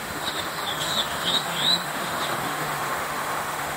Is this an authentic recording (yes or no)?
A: no